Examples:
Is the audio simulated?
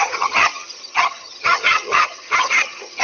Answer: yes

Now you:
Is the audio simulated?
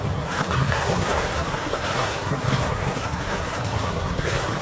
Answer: yes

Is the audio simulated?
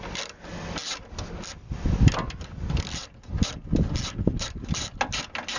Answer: no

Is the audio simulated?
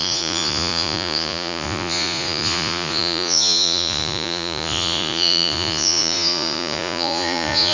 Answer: yes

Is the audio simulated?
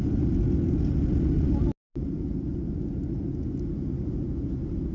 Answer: no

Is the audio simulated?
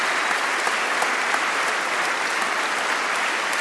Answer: no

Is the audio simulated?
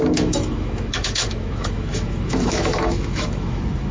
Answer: yes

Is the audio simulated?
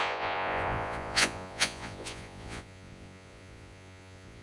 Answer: yes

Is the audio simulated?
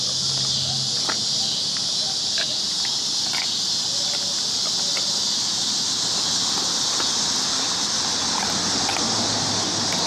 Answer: no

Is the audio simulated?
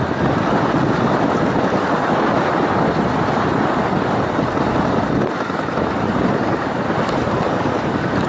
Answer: no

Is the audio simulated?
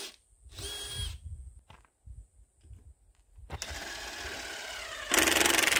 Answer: no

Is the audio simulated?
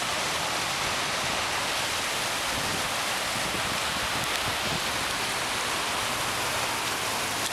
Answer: no